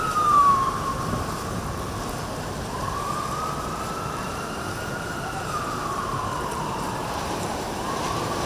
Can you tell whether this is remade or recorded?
remade